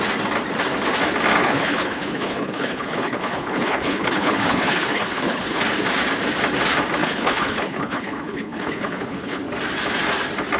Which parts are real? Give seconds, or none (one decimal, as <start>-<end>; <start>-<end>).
0.0-1.4; 5.6-7.0; 9.4-10.6